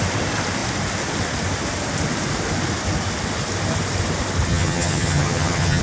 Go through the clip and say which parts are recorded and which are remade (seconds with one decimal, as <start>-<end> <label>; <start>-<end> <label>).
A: 0.0-4.5 recorded; 4.5-5.8 remade